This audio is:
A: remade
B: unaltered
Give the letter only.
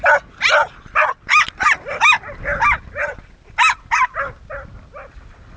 B